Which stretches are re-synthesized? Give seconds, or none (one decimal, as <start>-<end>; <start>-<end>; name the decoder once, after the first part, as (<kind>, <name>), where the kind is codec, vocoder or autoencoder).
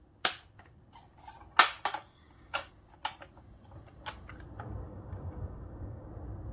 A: 2.1-2.7 (codec, DAC); 4.9-6.1